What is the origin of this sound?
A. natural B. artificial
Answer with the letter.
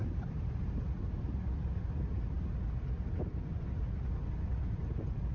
A